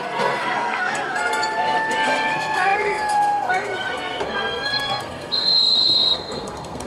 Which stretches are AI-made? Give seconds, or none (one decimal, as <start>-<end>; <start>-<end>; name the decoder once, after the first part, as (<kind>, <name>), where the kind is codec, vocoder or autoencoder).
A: 0.0-6.9 (codec, SNAC)

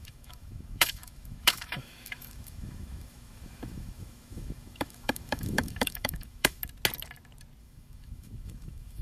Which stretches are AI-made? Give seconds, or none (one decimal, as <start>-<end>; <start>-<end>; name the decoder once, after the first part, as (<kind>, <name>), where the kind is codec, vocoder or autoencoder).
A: 0.0-6.6 (autoencoder, DAC-VAE); 7.6-9.0